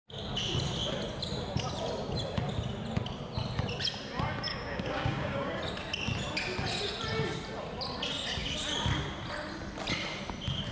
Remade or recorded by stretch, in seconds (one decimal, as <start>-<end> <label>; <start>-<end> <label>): 0.0-4.5 recorded; 4.5-5.6 remade; 5.6-10.7 recorded